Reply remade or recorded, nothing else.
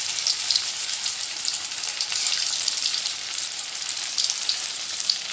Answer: remade